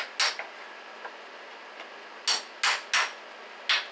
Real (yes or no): yes